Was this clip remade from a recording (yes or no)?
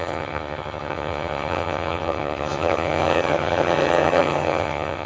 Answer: yes